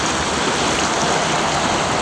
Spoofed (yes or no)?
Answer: no